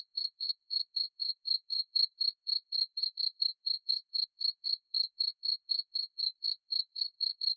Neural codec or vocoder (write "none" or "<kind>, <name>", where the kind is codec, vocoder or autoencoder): codec, SNAC